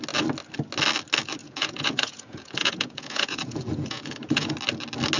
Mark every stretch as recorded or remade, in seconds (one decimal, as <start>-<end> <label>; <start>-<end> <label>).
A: 0.0-1.4 recorded; 1.4-4.5 remade; 4.5-5.2 recorded